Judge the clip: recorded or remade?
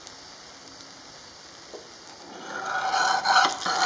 recorded